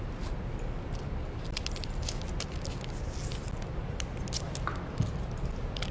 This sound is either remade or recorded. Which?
recorded